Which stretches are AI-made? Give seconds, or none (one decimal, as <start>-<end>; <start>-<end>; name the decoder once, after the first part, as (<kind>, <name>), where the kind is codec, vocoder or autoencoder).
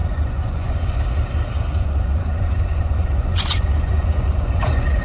0.0-1.0 (vocoder, Vocos); 1.7-5.0